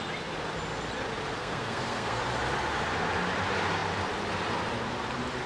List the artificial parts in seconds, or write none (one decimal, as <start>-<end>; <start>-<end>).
1.4-2.2